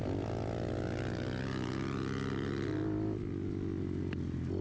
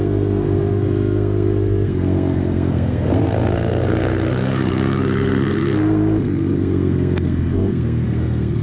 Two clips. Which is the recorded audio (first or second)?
first